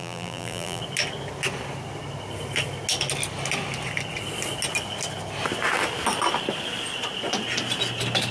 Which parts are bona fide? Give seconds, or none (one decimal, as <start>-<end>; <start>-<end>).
0.8-8.3